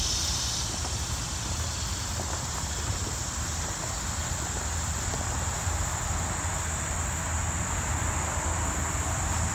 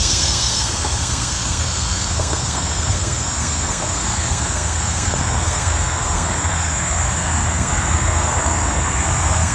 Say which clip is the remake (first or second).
second